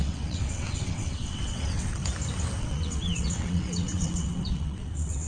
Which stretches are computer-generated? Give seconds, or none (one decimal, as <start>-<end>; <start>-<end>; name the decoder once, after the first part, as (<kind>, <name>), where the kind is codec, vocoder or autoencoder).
0.0-2.0 (vocoder, WaveNeXt); 2.6-5.3

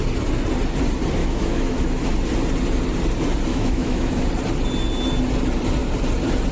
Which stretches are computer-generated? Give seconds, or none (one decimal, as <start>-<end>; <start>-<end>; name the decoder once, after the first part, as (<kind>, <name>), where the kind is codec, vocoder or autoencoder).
1.2-1.8 (autoencoder, DAC-VAE); 3.5-4.2